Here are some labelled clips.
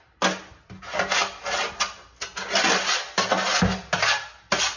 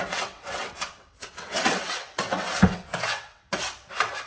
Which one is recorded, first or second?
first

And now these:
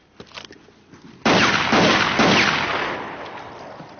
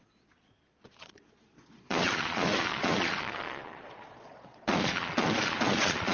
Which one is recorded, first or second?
first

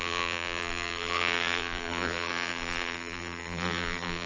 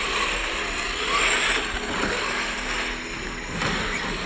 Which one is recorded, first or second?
second